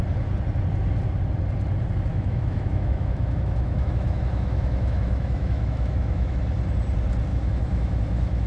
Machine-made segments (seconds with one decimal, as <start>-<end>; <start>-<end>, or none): 2.1-6.4; 7.3-8.5